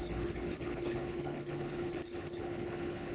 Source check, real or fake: fake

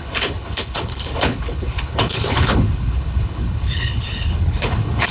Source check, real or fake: fake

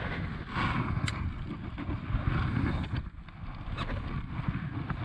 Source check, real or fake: real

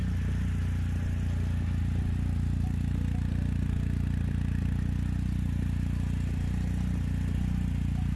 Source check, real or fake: real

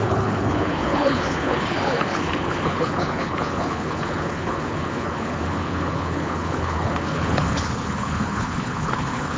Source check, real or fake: fake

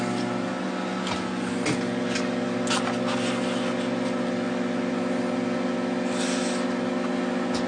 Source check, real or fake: real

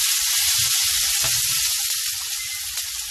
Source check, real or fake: real